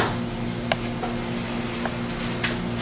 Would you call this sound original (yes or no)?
yes